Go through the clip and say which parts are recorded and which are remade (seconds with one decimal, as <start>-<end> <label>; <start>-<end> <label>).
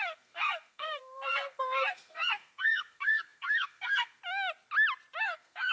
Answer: 0.0-4.2 remade; 4.2-5.2 recorded; 5.2-5.7 remade